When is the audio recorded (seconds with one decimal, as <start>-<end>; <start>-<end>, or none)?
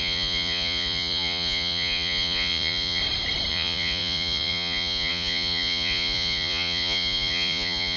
3.0-3.5